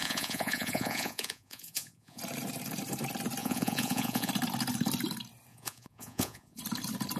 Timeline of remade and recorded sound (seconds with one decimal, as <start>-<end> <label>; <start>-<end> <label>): 0.0-2.2 remade; 2.2-3.4 recorded; 3.4-4.3 remade; 4.3-5.5 recorded; 5.5-6.6 remade; 6.6-7.2 recorded